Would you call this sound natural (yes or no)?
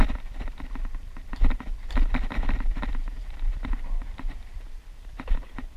no